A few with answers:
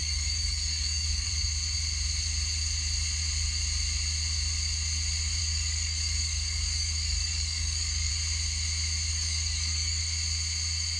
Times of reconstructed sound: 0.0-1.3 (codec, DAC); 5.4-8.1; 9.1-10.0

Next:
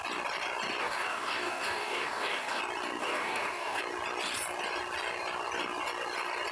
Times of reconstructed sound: 0.8-2.6 (codec, DAC); 3.0-3.8